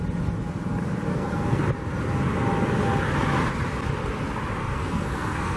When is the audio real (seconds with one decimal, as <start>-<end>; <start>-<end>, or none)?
0.0-1.1; 1.6-4.6